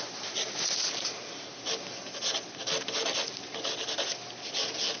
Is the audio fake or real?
real